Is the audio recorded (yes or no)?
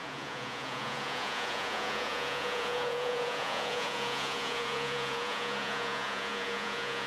no